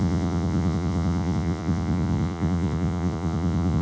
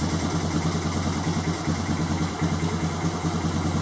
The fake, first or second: first